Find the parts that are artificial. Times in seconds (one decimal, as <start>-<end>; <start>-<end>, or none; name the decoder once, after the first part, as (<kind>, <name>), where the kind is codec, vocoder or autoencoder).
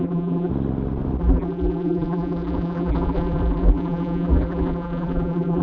0.0-0.5 (vocoder, BigVGAN v2); 1.2-5.6